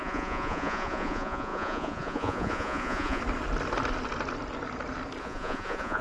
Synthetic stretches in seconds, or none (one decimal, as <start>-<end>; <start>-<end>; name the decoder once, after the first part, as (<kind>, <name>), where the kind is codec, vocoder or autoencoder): 0.0-3.2 (vocoder, Vocos); 5.2-6.0